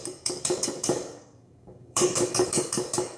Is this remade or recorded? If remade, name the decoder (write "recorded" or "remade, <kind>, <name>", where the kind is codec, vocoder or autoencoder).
remade, codec, DAC